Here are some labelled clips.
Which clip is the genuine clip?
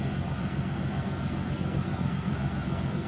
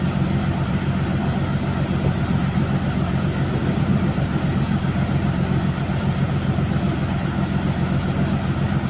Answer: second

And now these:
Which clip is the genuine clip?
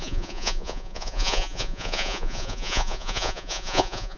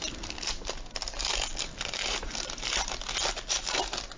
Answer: second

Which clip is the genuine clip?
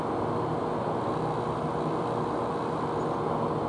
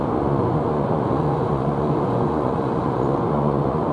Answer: first